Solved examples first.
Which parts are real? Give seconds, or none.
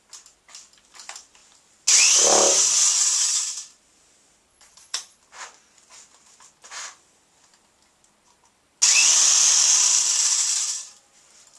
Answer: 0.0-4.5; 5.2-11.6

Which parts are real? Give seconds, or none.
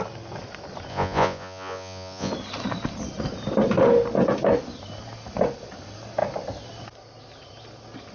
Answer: 0.0-0.9; 2.3-8.1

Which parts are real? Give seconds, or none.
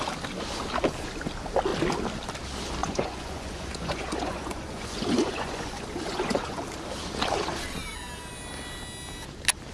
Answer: 0.0-2.8; 6.6-9.7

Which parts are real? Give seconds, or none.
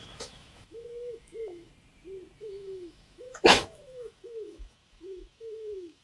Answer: 1.7-2.4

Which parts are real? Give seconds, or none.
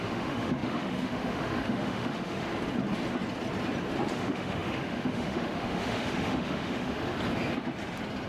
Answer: 2.5-4.1; 7.1-8.3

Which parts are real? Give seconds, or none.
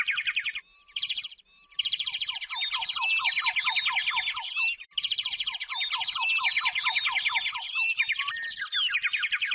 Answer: 0.0-0.8; 2.4-4.0; 8.2-9.5